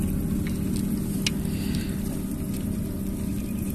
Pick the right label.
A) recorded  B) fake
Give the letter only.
A